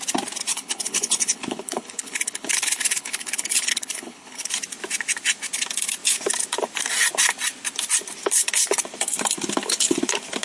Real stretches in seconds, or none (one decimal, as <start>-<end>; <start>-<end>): 0.0-0.5; 4.5-10.4